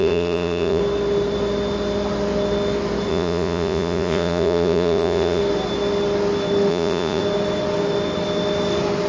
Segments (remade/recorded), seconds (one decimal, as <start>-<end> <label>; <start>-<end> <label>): 0.0-0.8 remade; 0.8-3.1 recorded; 3.1-5.4 remade; 5.4-6.7 recorded; 6.7-7.2 remade; 7.2-9.1 recorded

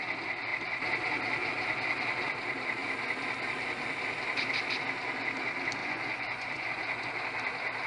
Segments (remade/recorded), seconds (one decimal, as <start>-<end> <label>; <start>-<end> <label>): 0.0-5.8 recorded; 5.8-7.1 remade; 7.1-7.9 recorded

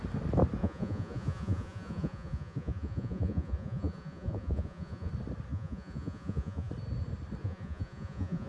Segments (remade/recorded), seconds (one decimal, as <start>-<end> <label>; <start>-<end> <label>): 0.0-0.6 recorded; 0.6-5.1 remade; 5.1-5.5 recorded; 5.5-6.7 remade; 6.7-7.4 recorded; 7.4-8.5 remade

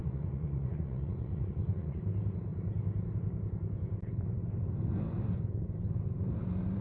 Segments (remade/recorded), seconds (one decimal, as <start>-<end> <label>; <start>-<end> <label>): 0.0-2.0 remade; 2.0-6.8 recorded

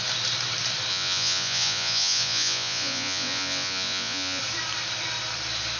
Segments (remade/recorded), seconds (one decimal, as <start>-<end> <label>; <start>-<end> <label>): 0.0-0.9 recorded; 0.9-4.4 remade; 4.4-5.8 recorded